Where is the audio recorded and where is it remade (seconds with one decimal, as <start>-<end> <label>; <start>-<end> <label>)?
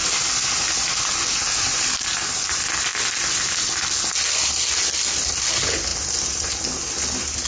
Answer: 0.0-7.5 recorded